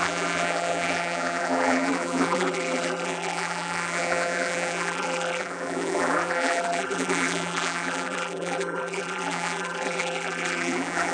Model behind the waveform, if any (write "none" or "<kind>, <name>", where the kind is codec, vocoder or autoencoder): vocoder, BigVGAN v2